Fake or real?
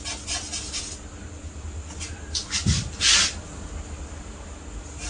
real